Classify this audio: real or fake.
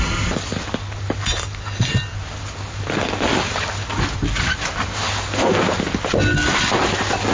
real